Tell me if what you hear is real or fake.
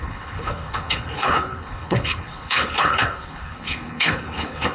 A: fake